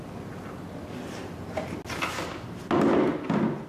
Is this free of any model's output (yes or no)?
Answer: yes